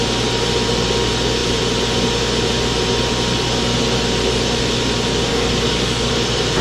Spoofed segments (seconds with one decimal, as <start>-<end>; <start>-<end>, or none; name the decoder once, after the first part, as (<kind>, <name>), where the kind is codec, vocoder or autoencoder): 5.3-6.1 (codec, DAC)

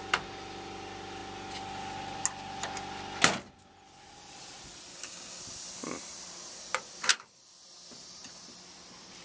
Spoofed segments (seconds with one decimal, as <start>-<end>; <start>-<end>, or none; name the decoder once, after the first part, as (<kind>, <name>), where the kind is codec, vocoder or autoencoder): 4.9-5.4 (codec, DAC)